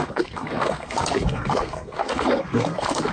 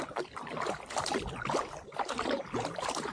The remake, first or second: first